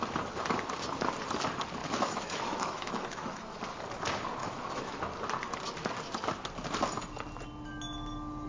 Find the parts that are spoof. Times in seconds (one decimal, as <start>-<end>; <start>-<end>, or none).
1.8-3.6; 4.4-5.0

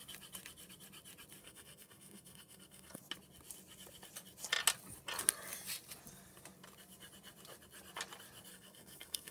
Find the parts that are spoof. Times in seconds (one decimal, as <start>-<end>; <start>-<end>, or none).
1.4-3.0; 8.5-9.3